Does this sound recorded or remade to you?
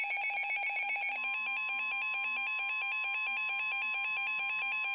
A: recorded